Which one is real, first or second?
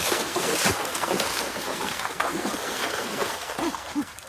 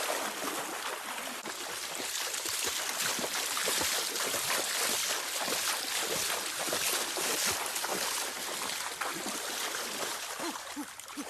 second